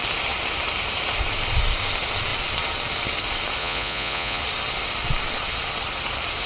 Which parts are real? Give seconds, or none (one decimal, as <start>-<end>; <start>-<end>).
0.0-3.6; 4.4-6.5